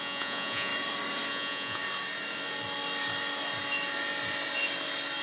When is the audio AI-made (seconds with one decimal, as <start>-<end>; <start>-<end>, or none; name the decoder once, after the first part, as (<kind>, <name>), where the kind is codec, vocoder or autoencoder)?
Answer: 0.0-0.7 (vocoder, Vocos); 1.3-1.8